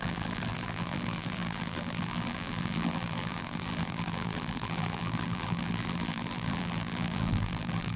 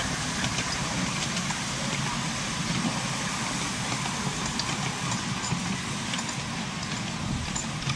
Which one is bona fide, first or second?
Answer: second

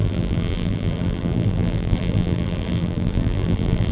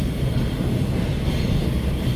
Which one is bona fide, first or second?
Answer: second